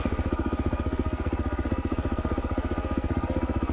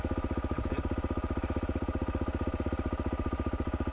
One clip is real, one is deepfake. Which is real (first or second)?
second